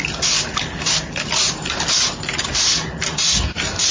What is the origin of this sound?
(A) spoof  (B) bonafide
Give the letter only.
B